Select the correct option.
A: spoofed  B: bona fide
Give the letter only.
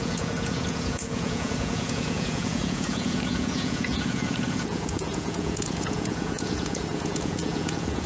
A